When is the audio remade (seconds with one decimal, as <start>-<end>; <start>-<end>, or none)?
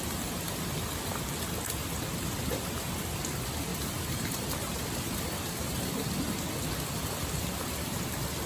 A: 3.7-6.0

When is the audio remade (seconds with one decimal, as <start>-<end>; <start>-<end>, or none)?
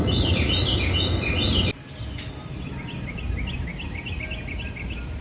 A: 3.7-4.2